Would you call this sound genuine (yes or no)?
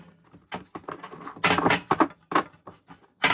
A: yes